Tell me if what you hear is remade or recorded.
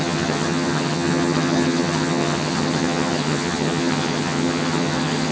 remade